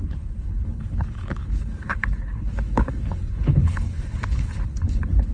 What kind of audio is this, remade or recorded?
remade